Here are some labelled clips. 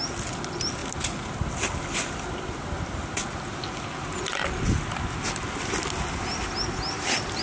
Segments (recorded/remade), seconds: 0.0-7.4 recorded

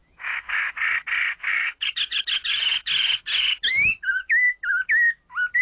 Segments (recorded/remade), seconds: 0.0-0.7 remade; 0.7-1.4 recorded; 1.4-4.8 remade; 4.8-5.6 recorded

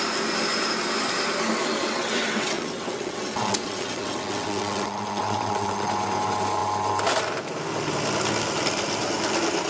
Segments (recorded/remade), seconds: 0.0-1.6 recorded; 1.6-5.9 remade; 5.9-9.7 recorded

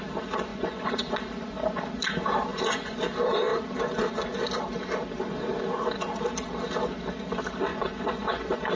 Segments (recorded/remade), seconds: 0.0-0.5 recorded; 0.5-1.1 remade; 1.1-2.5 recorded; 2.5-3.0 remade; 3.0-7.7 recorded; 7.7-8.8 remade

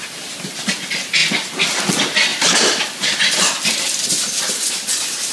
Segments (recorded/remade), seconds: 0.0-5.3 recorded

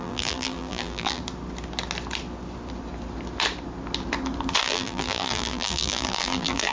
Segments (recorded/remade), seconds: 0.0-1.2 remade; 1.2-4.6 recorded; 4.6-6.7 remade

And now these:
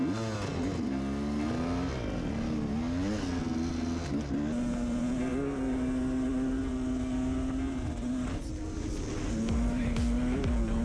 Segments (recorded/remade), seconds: 0.0-10.8 recorded